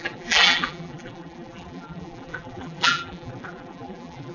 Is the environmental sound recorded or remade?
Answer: remade